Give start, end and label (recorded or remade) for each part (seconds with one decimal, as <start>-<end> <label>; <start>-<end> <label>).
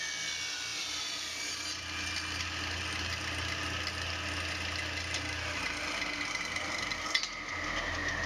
0.0-0.7 recorded; 0.7-1.5 remade; 1.5-8.3 recorded